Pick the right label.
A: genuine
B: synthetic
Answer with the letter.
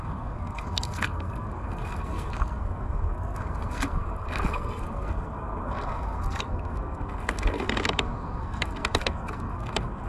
B